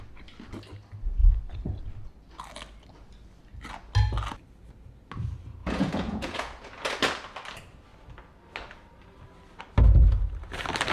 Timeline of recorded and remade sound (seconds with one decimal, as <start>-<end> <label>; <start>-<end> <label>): 0.0-5.6 recorded; 5.6-6.7 remade; 6.7-10.9 recorded